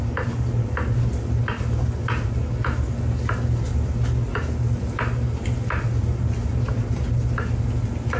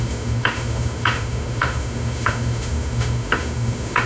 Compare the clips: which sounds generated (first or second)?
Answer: second